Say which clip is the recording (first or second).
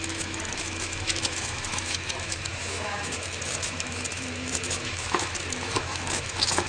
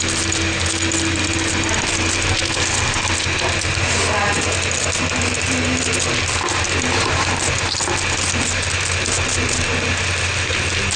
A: second